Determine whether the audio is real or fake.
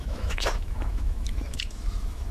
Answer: fake